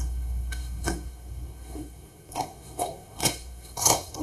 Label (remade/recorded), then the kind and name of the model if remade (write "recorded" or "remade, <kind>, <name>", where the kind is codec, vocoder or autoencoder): remade, codec, SNAC